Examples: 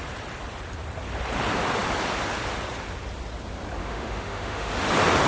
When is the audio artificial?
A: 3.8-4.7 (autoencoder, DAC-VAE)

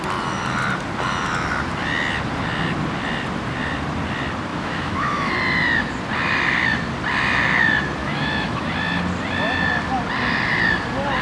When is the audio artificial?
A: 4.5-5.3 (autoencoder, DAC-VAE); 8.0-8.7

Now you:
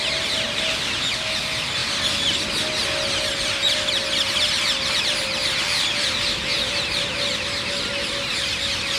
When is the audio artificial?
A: none

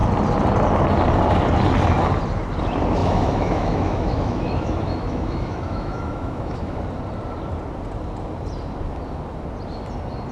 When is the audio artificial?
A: 3.0-6.8 (autoencoder, DAC-VAE)